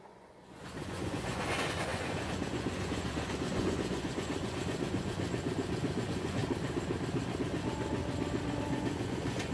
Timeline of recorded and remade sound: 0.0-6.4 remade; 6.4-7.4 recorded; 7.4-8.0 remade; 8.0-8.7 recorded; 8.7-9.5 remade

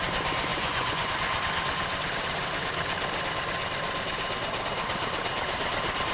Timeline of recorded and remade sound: 0.0-0.5 recorded; 0.5-1.1 remade; 1.1-6.1 recorded

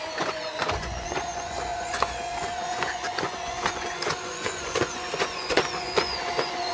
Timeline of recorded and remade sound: 0.0-6.7 remade

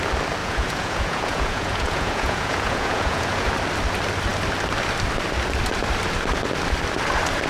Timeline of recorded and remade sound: 0.0-0.4 recorded; 0.4-3.5 remade; 3.5-7.5 recorded

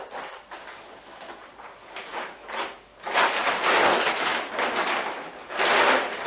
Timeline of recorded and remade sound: 0.0-6.3 recorded

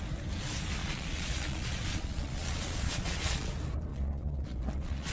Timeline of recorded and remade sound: 0.0-0.8 recorded; 0.8-3.5 remade; 3.5-3.9 recorded; 3.9-5.1 remade

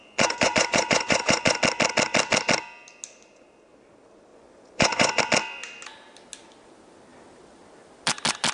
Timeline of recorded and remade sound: 0.0-1.6 remade; 1.6-4.3 recorded; 4.3-5.2 remade; 5.2-8.5 recorded